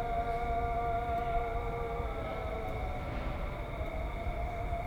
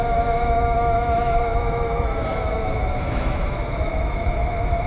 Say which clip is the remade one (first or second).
second